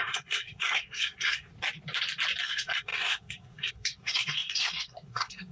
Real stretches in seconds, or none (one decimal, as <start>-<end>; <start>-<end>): 1.5-2.4